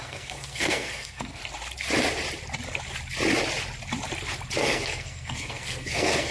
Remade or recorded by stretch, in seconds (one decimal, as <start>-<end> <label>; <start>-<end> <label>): 0.0-1.4 remade; 1.4-4.6 recorded; 4.6-6.3 remade